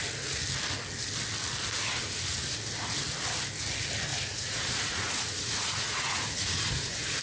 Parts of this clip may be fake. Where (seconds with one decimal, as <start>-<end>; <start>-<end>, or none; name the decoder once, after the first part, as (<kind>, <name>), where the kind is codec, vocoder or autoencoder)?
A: 4.1-7.2 (vocoder, Vocos)